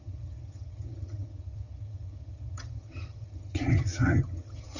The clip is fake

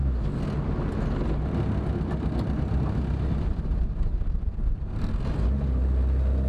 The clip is real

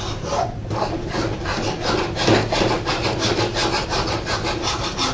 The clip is real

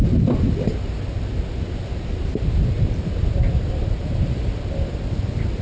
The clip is real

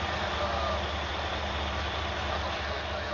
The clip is real